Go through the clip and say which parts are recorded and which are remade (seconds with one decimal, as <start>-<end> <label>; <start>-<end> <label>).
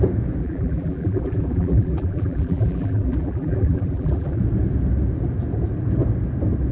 0.0-0.4 recorded; 0.4-4.4 remade; 4.4-6.7 recorded